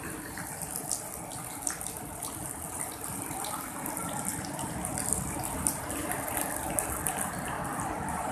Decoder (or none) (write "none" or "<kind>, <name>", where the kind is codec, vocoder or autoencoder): none